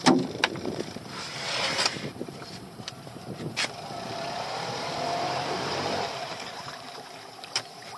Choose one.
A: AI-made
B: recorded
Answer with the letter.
A